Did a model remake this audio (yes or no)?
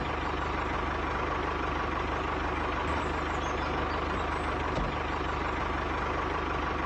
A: no